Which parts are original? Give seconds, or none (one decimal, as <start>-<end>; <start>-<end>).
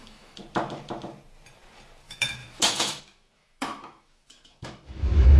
0.4-2.0